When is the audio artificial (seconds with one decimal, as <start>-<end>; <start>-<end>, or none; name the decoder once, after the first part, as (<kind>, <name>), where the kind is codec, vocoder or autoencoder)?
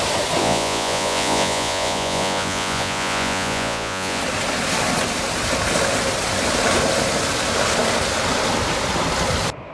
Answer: 0.4-4.2 (vocoder, Vocos)